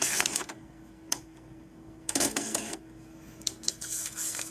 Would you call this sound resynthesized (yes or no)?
yes